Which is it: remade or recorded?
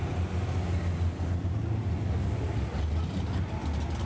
recorded